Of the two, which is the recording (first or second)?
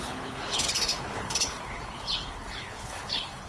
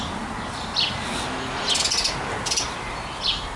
second